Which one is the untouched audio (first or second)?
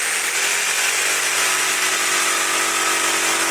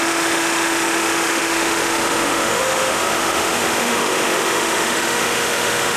first